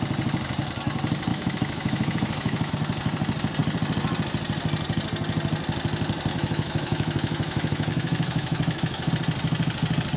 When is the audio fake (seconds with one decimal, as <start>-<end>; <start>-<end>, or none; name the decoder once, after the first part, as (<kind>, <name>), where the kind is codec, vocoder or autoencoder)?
1.3-2.7 (autoencoder, DAC-VAE); 6.3-9.1